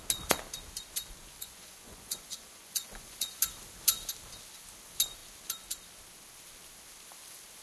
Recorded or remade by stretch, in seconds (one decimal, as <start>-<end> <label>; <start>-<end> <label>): 0.0-1.2 recorded; 1.2-3.4 remade; 3.4-7.6 recorded